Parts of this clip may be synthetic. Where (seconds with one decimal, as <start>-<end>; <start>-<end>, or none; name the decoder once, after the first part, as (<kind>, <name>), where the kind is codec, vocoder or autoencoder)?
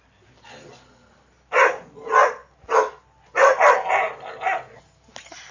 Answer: none